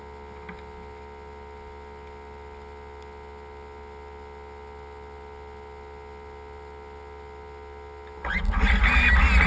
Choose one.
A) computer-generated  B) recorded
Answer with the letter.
B